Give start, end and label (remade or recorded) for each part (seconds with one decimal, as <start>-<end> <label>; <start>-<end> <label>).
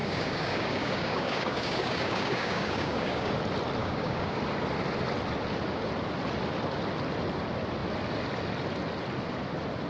0.0-3.3 remade; 3.3-3.8 recorded; 3.8-4.4 remade; 4.4-9.9 recorded